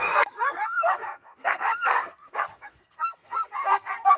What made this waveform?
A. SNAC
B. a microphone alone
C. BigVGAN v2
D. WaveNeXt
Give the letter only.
A